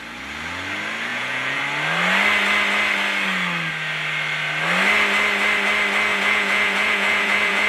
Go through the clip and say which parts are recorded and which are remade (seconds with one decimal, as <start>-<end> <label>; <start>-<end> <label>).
0.0-1.1 recorded; 1.1-1.6 remade; 1.6-6.1 recorded; 6.1-7.7 remade